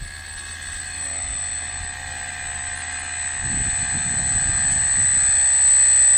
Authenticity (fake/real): real